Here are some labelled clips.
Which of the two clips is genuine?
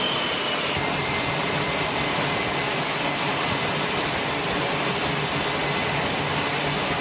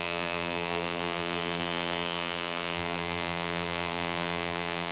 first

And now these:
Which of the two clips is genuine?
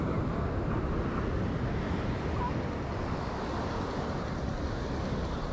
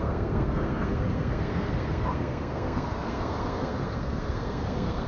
first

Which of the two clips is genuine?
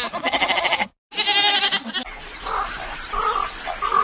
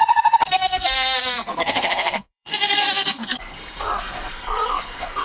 first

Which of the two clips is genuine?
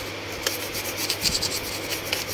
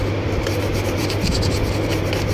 first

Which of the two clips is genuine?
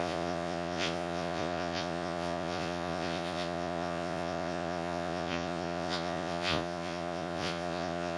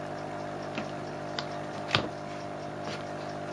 second